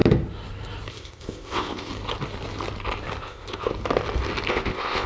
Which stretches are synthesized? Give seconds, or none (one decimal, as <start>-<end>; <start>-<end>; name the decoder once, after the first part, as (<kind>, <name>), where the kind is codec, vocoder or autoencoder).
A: 0.9-1.9 (codec, ZipCodec); 3.2-3.7; 4.5-5.1